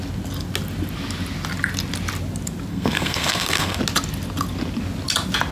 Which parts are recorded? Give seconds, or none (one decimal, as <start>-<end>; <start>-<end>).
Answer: 0.0-2.7; 3.8-5.5